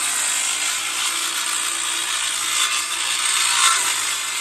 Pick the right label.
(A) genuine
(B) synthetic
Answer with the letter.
A